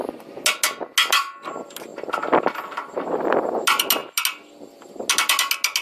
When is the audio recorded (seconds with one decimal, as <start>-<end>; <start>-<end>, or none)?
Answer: 0.0-5.8